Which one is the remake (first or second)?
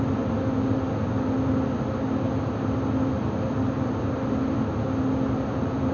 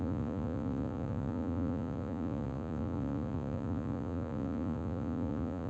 second